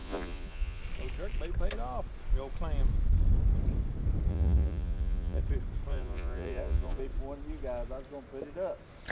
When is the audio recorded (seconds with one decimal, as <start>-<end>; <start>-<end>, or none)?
0.8-4.3; 5.4-5.9; 7.0-9.1